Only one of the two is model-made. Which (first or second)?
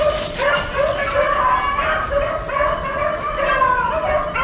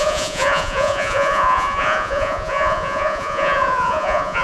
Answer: second